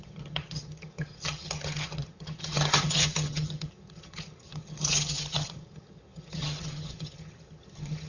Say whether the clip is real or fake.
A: fake